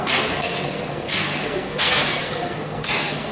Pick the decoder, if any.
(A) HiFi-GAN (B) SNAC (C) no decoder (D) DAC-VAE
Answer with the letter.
B